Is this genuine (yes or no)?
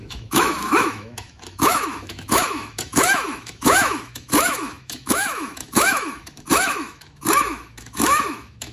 no